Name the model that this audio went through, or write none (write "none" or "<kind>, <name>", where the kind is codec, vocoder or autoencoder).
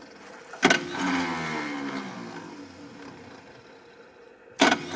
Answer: none